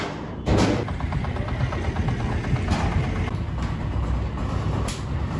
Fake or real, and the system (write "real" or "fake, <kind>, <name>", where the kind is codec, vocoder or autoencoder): real